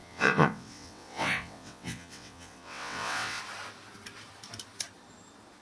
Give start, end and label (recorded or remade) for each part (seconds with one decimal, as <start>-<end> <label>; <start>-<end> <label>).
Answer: 0.0-3.4 remade; 3.4-5.6 recorded